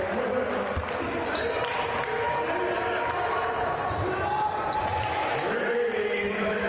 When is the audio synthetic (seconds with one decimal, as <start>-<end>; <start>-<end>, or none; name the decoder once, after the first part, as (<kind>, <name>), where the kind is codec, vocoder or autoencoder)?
4.9-6.7 (autoencoder, DAC-VAE)